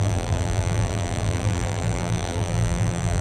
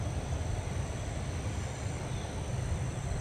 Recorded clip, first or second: second